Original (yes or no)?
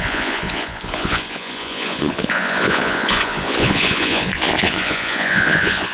no